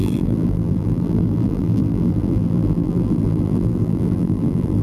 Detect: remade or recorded remade